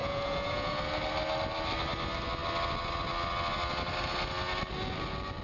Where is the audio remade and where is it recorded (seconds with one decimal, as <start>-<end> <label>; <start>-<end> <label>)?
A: 0.0-0.8 remade; 0.8-5.4 recorded